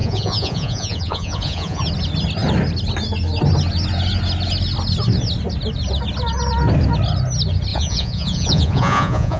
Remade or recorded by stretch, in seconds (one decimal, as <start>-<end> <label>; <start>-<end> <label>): 0.0-1.8 remade; 1.8-7.7 recorded; 7.7-9.4 remade